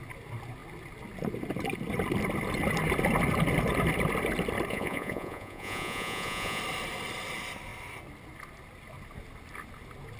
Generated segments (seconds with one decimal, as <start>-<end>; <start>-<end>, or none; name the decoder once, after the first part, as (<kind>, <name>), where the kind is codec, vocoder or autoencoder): 4.7-6.6 (vocoder, Vocos)